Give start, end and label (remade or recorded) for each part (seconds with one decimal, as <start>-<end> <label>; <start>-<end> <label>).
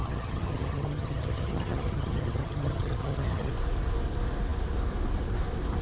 0.0-3.5 remade; 3.5-5.8 recorded